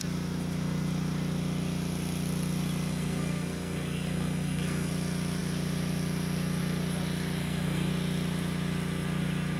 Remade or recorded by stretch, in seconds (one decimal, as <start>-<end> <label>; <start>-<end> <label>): 0.0-2.9 recorded; 2.9-4.9 remade; 4.9-7.4 recorded; 7.4-7.9 remade; 7.9-9.6 recorded